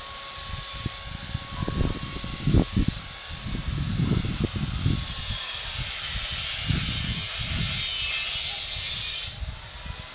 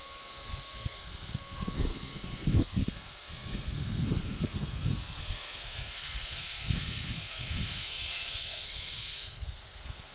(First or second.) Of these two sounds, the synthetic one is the second